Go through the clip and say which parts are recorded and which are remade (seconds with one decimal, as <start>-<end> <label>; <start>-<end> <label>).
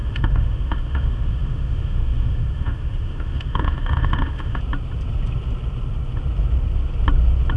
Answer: 0.0-4.6 remade; 4.6-7.6 recorded